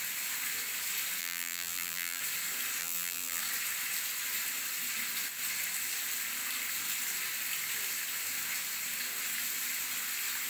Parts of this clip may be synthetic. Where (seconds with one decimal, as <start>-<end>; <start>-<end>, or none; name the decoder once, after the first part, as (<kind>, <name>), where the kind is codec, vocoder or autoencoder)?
1.2-2.2 (vocoder, BigVGAN v2); 2.8-3.4